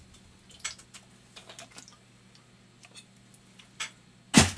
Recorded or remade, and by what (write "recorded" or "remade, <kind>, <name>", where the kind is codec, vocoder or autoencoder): recorded